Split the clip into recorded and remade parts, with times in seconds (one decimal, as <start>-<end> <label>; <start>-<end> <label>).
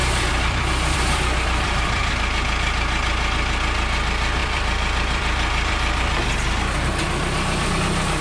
0.0-2.1 remade; 2.1-4.4 recorded; 4.4-7.7 remade; 7.7-8.2 recorded